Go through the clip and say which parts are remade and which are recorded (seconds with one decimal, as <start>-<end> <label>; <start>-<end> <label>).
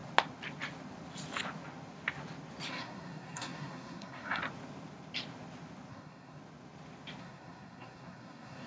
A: 0.0-2.7 recorded; 2.7-4.4 remade; 4.4-5.9 recorded; 5.9-6.4 remade; 6.4-7.2 recorded; 7.2-8.7 remade